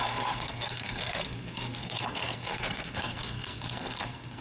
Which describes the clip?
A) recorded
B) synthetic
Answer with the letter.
B